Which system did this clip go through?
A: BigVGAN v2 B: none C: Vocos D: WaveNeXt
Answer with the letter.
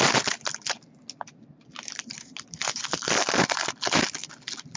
B